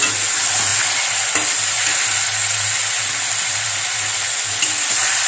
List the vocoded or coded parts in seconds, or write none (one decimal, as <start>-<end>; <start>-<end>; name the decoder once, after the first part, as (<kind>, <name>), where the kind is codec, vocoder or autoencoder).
none